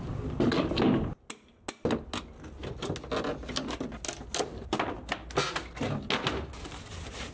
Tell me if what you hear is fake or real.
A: real